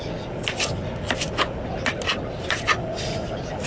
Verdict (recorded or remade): recorded